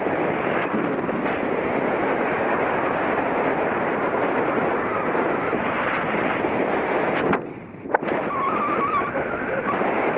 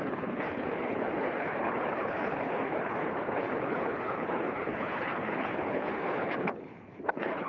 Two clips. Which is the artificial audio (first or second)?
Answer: second